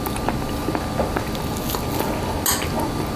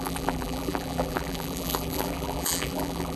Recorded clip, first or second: first